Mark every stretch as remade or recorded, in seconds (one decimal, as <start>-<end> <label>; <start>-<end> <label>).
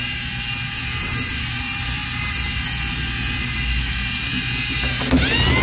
0.0-5.6 recorded